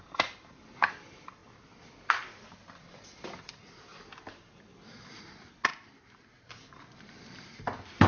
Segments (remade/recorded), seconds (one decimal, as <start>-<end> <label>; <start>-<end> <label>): 0.0-1.4 remade; 1.4-2.7 recorded; 2.7-3.9 remade; 3.9-5.2 recorded; 5.2-5.7 remade; 5.7-6.5 recorded; 6.5-8.1 remade